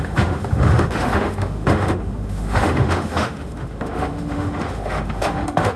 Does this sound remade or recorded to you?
remade